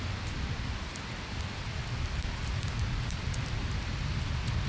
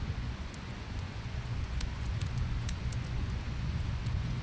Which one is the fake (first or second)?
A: second